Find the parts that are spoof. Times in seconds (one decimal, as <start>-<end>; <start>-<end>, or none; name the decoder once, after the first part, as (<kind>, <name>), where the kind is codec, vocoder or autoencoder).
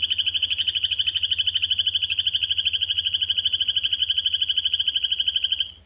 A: none